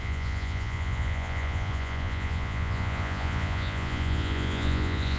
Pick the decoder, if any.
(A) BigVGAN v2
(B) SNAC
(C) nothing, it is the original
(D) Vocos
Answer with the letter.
D